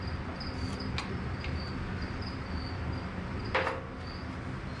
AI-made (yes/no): no